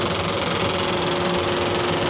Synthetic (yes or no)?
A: no